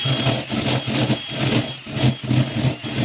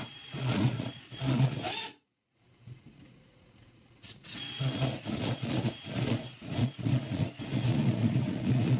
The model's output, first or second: second